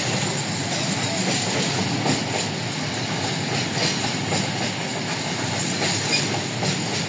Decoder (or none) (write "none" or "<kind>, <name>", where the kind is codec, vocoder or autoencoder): none